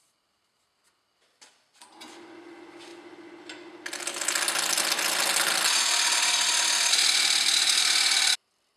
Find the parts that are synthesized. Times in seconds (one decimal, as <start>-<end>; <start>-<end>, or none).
none